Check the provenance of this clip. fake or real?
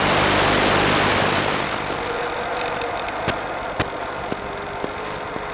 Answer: real